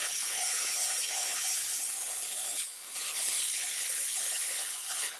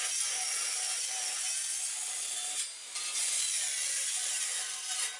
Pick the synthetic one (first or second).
first